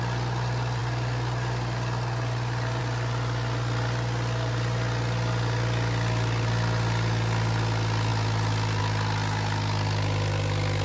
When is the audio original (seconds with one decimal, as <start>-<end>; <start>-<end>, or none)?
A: 0.0-10.8